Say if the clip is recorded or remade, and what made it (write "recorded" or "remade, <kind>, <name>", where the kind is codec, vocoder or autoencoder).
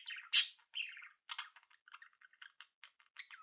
recorded